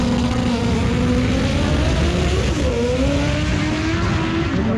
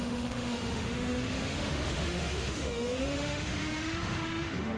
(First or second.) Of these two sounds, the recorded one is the first